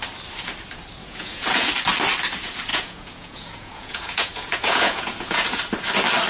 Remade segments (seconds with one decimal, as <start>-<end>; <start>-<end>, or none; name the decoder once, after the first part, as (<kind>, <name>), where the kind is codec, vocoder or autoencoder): 1.0-1.7 (vocoder, Vocos); 2.7-5.6